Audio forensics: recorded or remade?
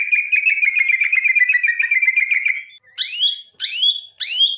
recorded